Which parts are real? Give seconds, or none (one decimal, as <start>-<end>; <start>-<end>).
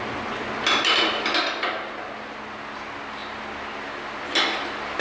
0.0-5.0